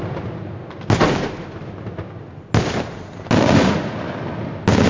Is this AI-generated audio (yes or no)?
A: no